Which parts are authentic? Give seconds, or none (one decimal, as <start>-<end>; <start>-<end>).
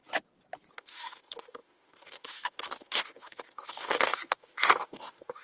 0.0-0.8